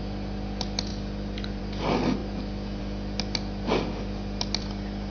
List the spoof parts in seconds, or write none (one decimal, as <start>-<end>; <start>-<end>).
none